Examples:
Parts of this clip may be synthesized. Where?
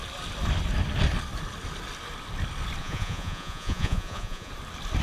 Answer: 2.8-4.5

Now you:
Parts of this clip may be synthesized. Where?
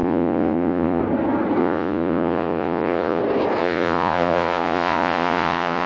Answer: 0.0-1.0; 1.6-3.2; 3.6-5.9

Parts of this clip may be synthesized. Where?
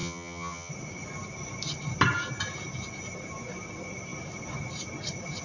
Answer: 0.0-0.7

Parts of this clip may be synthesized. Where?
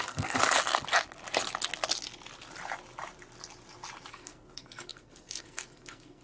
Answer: 0.0-0.4; 4.1-6.2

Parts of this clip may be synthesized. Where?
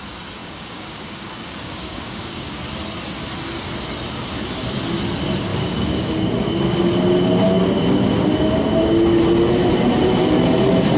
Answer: 0.4-2.6; 5.5-6.1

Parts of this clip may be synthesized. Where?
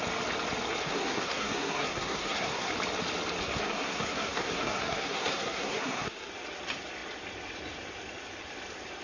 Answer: 0.8-2.7; 3.4-6.3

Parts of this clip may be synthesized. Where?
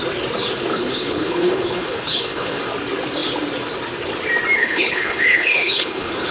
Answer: 0.7-2.6; 4.6-6.3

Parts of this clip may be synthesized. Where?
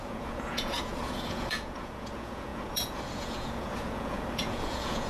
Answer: 0.0-5.1